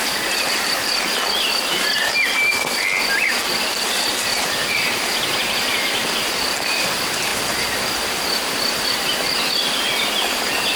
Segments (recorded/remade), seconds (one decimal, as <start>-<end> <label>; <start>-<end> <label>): 0.0-10.8 recorded